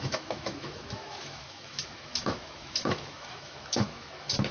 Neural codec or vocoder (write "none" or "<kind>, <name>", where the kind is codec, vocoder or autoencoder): autoencoder, DAC-VAE